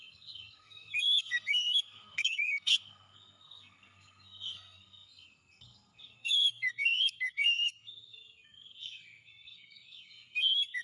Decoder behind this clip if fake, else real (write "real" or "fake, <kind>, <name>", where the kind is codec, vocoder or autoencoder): fake, codec, SNAC